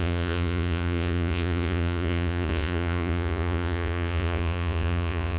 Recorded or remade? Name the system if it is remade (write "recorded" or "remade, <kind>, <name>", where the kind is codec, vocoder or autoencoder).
remade, vocoder, Vocos